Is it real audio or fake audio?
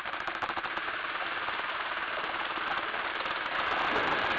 real